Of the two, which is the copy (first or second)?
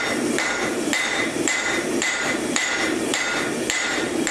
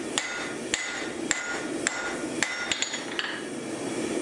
first